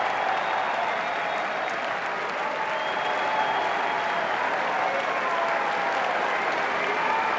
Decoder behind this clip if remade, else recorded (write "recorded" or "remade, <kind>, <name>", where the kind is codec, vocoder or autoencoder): recorded